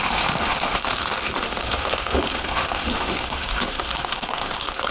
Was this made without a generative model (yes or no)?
no